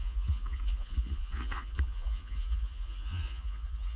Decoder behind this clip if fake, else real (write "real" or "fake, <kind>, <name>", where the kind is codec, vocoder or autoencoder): fake, vocoder, Vocos